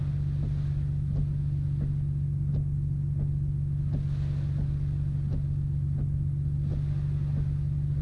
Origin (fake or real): real